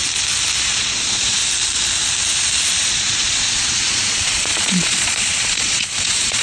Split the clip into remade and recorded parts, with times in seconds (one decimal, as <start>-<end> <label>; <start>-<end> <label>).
0.0-0.6 recorded; 0.6-1.4 remade; 1.4-2.9 recorded; 2.9-6.4 remade